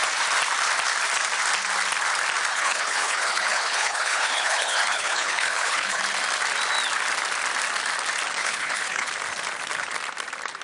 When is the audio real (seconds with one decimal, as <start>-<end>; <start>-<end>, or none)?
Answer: 0.0-2.5; 6.0-8.4; 9.1-10.6